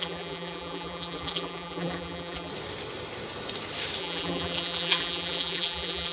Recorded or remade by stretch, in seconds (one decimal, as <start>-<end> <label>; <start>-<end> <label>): 0.0-2.5 remade; 2.5-4.0 recorded; 4.0-6.1 remade